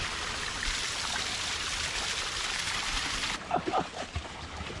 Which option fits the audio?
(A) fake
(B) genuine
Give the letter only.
B